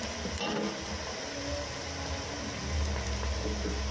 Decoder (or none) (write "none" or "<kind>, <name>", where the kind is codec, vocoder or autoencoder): none